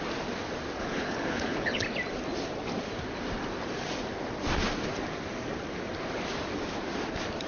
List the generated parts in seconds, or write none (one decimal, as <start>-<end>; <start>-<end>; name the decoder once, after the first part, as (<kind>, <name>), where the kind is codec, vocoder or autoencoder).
0.8-1.8 (codec, HILCodec)